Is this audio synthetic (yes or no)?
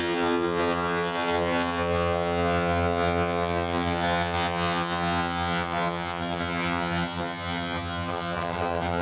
yes